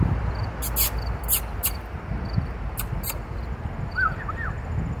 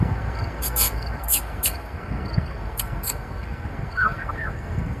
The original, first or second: first